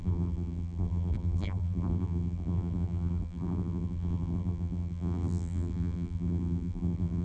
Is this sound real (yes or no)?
no